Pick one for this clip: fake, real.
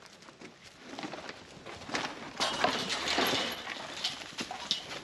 real